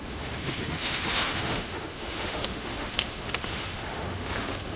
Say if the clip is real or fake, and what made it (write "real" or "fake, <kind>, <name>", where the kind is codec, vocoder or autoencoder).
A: fake, autoencoder, DAC-VAE